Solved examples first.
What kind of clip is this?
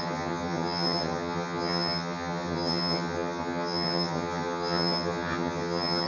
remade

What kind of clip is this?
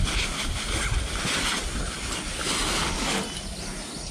recorded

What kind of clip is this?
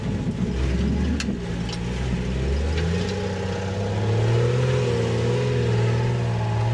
recorded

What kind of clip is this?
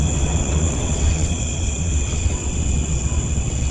remade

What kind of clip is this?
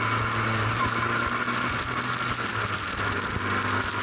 recorded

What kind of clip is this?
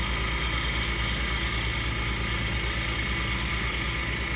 recorded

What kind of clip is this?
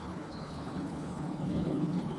remade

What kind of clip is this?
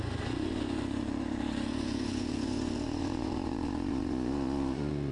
remade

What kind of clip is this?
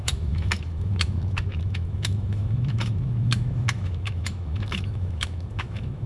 remade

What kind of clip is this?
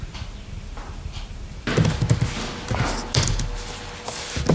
recorded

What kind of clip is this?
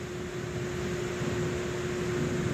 recorded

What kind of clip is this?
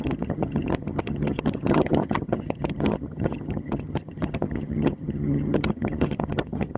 remade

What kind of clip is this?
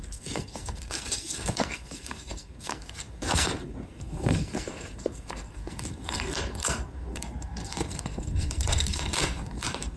remade